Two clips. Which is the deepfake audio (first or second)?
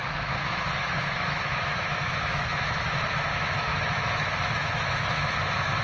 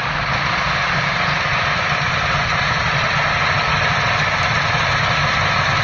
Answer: first